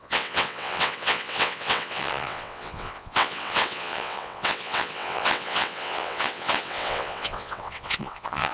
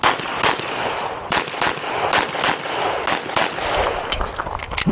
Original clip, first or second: second